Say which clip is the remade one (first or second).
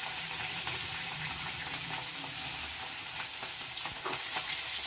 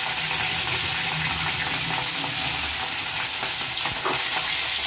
first